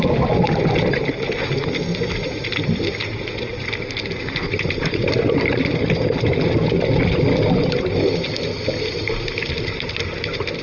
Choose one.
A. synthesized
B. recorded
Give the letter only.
B